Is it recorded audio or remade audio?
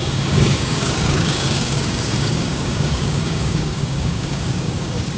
remade